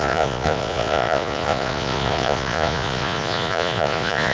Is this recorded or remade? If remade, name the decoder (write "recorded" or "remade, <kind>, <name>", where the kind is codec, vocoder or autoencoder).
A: remade, vocoder, Vocos